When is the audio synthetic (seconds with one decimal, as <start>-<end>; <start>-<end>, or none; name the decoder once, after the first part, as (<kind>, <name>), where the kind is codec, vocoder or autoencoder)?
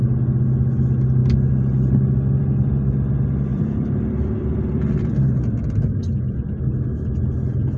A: 3.5-5.1 (vocoder, BigVGAN v2)